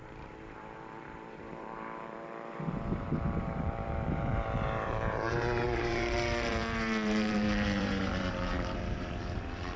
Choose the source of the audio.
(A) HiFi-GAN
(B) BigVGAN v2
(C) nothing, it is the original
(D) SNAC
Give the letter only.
B